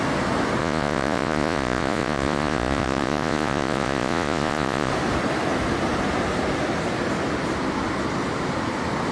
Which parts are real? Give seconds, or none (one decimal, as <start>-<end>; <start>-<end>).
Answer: 0.0-0.6; 4.9-9.1